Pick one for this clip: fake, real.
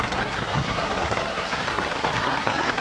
fake